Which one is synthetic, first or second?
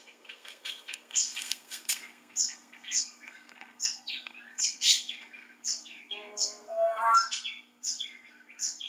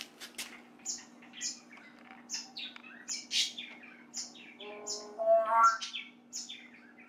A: first